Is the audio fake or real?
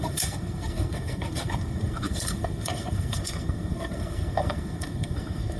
fake